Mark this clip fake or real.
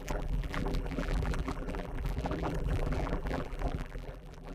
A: fake